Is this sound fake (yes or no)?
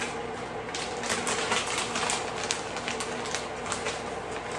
no